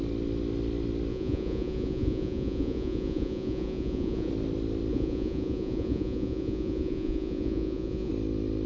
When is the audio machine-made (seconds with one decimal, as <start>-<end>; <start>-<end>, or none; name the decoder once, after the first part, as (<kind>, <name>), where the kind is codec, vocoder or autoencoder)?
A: 1.1-4.3 (vocoder, Vocos); 4.9-8.1